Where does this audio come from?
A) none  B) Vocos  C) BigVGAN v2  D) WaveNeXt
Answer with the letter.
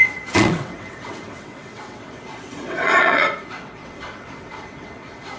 D